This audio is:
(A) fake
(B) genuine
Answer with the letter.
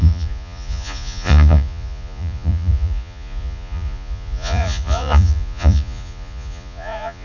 A